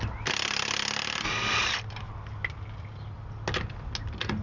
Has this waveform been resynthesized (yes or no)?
no